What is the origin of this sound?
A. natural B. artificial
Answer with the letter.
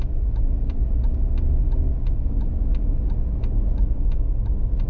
A